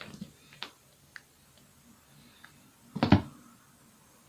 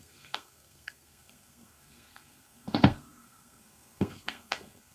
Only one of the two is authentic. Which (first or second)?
first